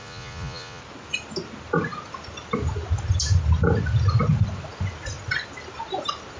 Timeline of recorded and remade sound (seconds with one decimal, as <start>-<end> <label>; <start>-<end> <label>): 0.0-0.8 remade; 0.8-6.4 recorded